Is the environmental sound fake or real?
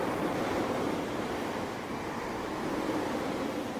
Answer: fake